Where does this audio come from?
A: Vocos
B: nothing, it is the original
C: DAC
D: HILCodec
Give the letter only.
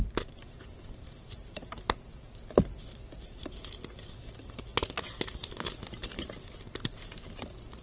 B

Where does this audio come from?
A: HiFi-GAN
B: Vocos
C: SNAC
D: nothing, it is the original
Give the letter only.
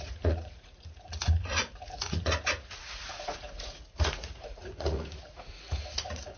B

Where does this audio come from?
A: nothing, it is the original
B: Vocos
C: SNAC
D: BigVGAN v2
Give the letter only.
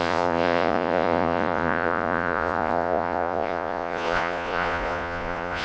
B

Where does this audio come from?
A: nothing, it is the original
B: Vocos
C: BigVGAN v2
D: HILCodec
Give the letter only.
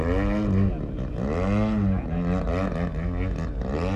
A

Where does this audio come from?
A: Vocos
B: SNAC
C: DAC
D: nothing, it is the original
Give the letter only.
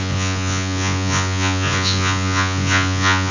A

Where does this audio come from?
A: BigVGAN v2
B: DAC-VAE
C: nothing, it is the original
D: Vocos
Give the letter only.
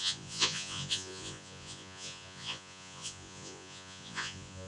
D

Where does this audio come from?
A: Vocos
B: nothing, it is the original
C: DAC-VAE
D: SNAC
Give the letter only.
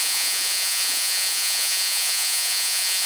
A